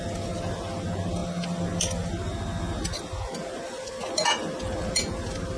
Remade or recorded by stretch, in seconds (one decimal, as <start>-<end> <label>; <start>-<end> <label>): 0.0-5.6 recorded